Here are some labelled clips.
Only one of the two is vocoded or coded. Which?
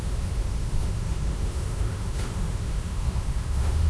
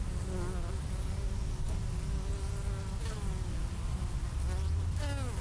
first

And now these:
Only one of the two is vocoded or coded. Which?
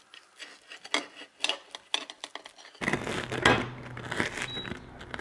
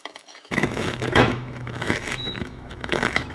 second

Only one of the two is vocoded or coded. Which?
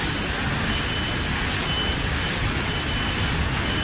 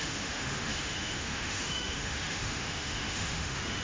second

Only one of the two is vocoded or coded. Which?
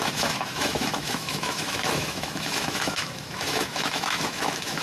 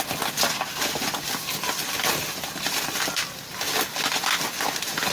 first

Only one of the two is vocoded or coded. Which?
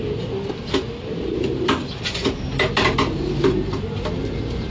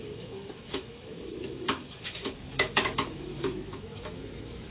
second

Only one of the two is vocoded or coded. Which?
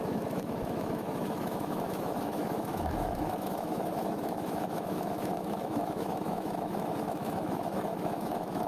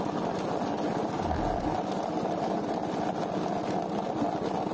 first